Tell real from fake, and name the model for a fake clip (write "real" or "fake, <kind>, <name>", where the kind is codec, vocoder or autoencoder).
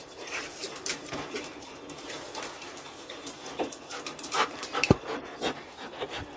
fake, vocoder, BigVGAN v2